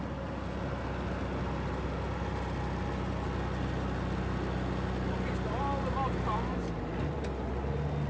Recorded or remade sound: recorded